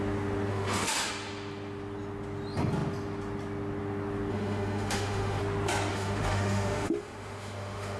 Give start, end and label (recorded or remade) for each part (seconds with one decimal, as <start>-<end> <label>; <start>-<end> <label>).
0.0-0.5 recorded; 0.5-1.1 remade; 1.1-4.3 recorded; 4.3-5.4 remade; 5.4-5.9 recorded; 5.9-8.0 remade